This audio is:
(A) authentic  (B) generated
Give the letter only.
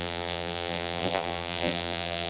B